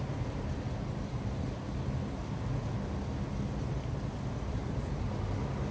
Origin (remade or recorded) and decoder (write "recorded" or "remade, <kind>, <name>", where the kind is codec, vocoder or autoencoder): recorded